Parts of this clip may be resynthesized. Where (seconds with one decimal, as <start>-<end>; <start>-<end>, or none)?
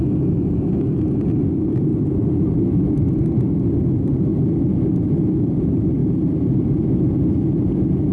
0.0-1.9; 2.7-6.0; 6.6-8.1